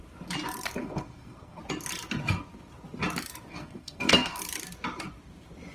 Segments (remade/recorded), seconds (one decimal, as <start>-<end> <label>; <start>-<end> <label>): 0.0-0.8 recorded; 0.8-1.6 remade; 1.6-3.5 recorded; 3.5-4.4 remade; 4.4-5.7 recorded